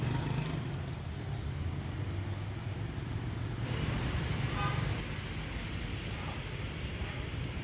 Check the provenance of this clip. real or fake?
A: real